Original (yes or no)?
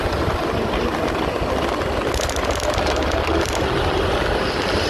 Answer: yes